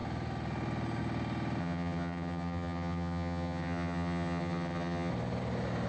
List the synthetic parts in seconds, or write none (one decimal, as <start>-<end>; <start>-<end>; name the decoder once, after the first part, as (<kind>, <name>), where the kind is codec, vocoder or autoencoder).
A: 1.6-5.1 (vocoder, HiFi-GAN)

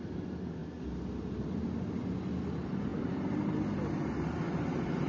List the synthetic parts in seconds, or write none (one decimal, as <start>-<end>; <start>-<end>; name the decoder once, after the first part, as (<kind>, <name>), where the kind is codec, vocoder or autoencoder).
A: none